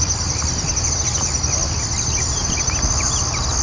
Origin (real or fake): real